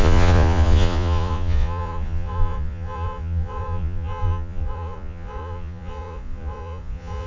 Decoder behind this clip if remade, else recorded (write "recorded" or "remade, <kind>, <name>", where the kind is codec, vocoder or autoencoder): remade, vocoder, Vocos